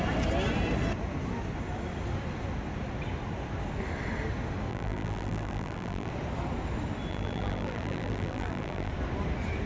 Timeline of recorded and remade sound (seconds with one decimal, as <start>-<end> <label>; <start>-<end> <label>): 0.0-4.7 recorded; 4.7-6.1 remade; 6.1-7.1 recorded; 7.1-8.9 remade; 8.9-9.7 recorded